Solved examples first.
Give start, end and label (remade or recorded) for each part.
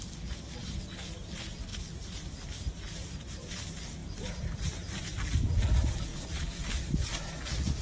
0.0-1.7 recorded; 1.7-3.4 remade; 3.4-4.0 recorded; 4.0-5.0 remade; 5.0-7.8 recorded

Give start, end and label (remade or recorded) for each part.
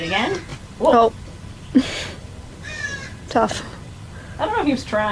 0.0-5.1 recorded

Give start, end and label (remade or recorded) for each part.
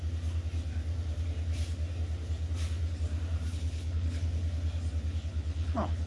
0.0-3.5 recorded; 3.5-4.3 remade; 4.3-5.3 recorded; 5.3-6.1 remade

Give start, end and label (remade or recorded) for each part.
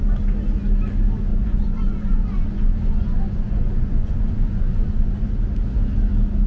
0.0-1.3 recorded; 1.3-5.2 remade; 5.2-6.5 recorded